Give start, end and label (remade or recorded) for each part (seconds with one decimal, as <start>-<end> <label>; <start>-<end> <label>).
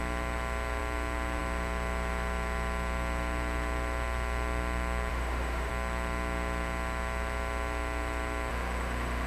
0.0-5.1 recorded; 5.1-5.7 remade; 5.7-8.5 recorded; 8.5-9.3 remade